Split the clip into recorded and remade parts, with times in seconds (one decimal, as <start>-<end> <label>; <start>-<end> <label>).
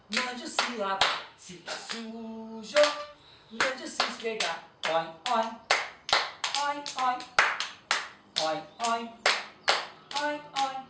0.0-1.1 recorded; 1.1-2.1 remade; 2.1-3.0 recorded; 3.0-3.7 remade; 3.7-10.9 recorded